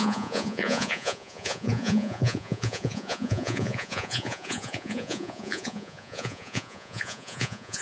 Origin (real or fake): fake